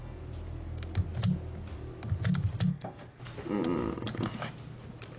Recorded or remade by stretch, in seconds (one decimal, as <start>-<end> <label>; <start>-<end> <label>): 0.0-2.7 recorded; 2.7-3.2 remade; 3.2-5.2 recorded